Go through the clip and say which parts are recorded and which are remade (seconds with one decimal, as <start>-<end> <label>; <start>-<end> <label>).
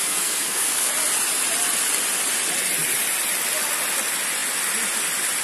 0.0-0.9 remade; 0.9-5.4 recorded